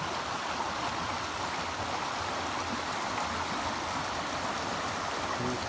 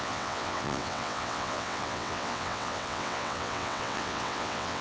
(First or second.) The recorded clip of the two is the first